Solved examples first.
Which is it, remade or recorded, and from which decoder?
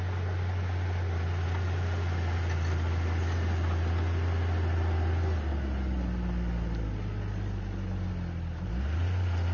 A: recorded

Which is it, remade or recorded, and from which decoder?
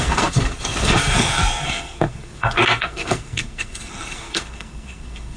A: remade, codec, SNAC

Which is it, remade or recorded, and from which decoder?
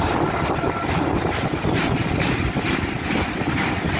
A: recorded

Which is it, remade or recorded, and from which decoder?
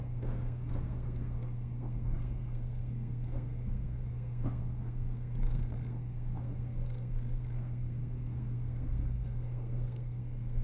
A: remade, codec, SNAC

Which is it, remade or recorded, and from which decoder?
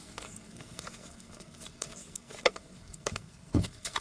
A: remade, codec, SNAC